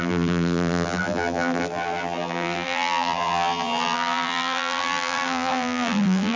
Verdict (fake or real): fake